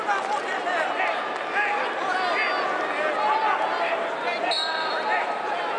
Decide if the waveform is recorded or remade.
recorded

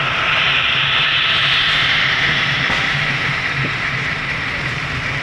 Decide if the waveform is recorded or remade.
remade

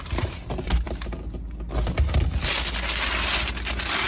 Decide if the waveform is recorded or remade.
recorded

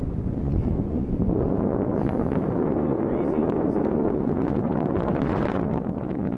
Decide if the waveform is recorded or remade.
remade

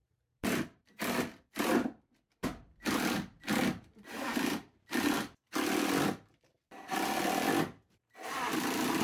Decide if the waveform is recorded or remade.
remade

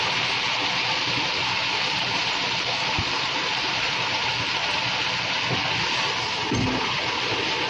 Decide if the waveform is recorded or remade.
recorded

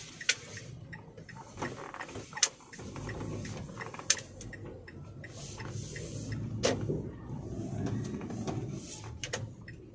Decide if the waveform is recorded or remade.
recorded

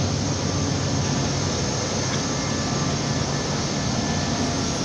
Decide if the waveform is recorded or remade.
recorded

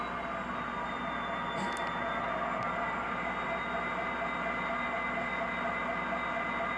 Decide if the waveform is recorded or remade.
recorded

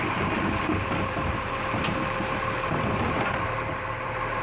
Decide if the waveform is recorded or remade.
remade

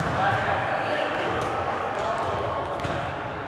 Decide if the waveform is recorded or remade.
remade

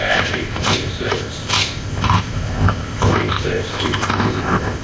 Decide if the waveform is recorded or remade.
remade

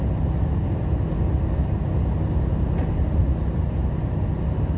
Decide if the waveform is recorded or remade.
recorded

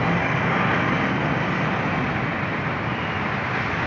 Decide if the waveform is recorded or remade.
recorded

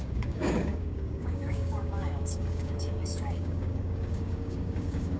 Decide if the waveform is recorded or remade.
remade